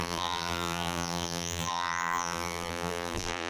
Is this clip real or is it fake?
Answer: fake